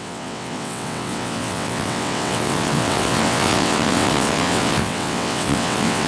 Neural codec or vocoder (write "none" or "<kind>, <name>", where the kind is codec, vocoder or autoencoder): vocoder, WaveNeXt